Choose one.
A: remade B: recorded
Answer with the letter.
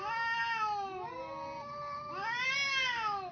B